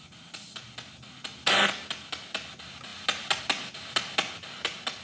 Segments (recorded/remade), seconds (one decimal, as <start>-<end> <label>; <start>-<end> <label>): 0.0-5.0 recorded